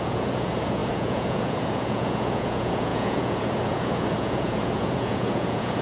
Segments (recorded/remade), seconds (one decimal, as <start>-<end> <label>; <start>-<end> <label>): 0.0-5.8 remade